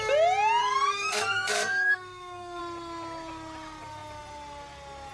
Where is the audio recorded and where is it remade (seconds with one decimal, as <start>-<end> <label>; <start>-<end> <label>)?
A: 0.0-0.6 recorded; 0.6-2.6 remade; 2.6-5.1 recorded